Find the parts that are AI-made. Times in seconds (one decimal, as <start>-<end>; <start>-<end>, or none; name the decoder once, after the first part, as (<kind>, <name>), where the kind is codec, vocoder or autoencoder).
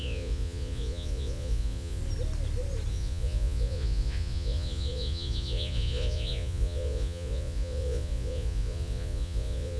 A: 0.0-2.0 (vocoder, Vocos); 2.9-9.8